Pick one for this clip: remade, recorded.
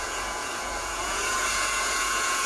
remade